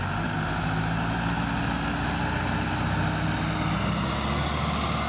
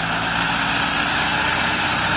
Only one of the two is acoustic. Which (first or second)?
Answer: first